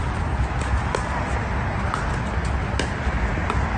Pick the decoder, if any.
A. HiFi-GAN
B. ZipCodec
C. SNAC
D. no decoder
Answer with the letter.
D